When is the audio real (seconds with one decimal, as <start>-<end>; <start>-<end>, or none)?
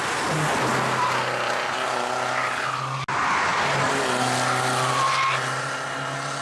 0.0-6.4